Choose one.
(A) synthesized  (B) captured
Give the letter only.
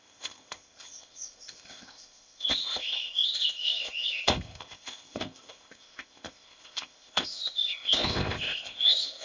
A